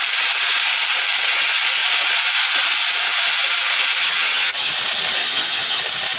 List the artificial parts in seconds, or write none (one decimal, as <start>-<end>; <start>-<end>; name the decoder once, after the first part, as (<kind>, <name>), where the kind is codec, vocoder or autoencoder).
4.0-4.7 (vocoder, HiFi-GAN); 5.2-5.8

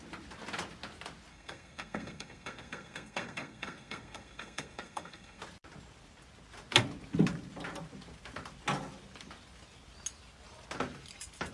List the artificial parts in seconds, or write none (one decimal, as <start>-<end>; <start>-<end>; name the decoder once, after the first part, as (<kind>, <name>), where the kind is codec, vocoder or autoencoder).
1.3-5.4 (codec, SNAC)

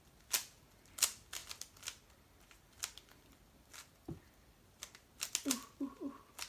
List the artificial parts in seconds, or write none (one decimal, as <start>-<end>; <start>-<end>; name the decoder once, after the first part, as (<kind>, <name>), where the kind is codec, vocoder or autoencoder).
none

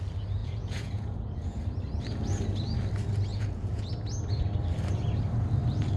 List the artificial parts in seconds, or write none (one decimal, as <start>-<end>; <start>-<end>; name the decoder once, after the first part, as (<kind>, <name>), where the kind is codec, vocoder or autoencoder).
0.4-1.6 (vocoder, Vocos); 3.3-3.9